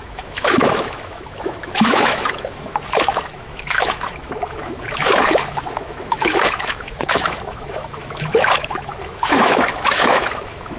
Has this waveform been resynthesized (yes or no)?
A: yes